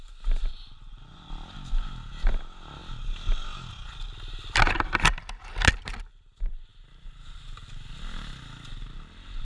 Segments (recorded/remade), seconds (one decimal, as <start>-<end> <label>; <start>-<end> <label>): 0.0-0.5 recorded; 0.5-1.3 remade; 1.3-9.4 recorded